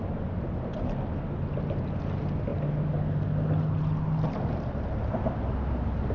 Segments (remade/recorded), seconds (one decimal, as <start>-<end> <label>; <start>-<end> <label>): 0.0-6.1 recorded